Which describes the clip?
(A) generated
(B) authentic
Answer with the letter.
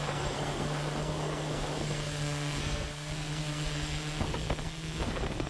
A